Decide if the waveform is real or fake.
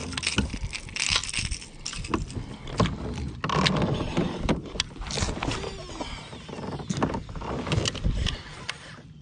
real